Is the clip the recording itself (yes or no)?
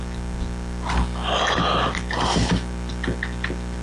yes